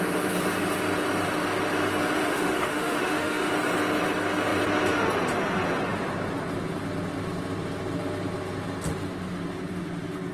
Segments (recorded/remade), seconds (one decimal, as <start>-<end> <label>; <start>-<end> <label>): 0.0-2.2 recorded; 2.2-3.5 remade; 3.5-10.3 recorded